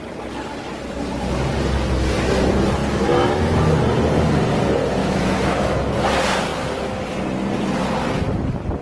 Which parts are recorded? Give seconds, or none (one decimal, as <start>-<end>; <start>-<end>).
0.0-5.0; 5.8-8.8